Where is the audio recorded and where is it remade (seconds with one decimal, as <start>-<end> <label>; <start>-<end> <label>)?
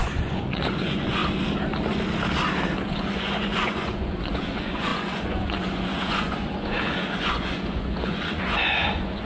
0.0-1.2 remade; 1.2-2.8 recorded; 2.8-9.3 remade